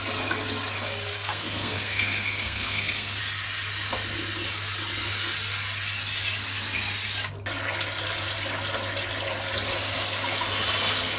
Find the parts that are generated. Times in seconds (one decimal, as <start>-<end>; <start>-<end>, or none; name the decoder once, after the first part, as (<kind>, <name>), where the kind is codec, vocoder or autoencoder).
1.1-3.2 (codec, SNAC)